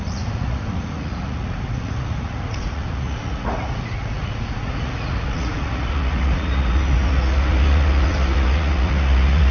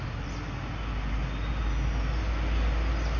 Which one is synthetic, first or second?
first